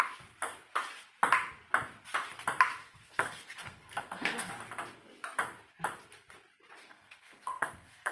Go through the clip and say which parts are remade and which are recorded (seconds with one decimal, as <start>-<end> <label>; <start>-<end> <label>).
0.0-2.8 recorded; 2.8-4.5 remade; 4.5-6.8 recorded; 6.8-8.1 remade